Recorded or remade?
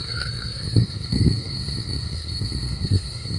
remade